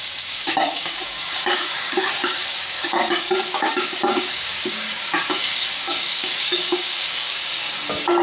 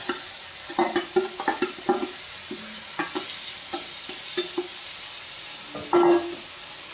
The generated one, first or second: first